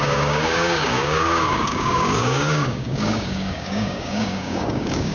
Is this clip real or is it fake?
fake